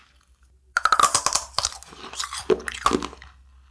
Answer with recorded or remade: recorded